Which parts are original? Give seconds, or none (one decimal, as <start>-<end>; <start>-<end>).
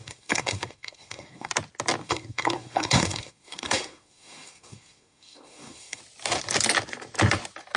1.5-2.0; 6.0-7.8